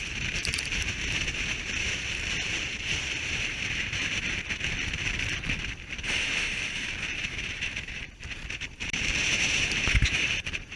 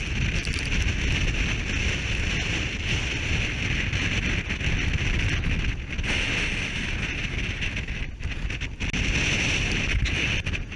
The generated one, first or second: first